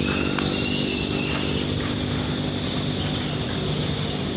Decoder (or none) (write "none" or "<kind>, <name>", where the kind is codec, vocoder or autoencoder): none